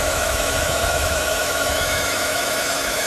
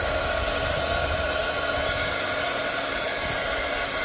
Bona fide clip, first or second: second